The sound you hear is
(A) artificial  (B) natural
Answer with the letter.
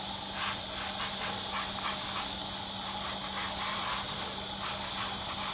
B